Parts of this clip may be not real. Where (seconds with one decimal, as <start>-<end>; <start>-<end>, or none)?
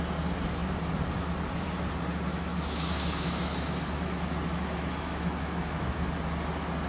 2.3-6.0